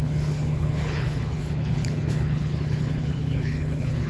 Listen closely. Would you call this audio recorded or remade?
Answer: remade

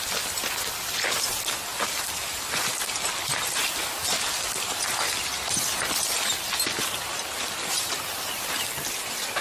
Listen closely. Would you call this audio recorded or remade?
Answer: recorded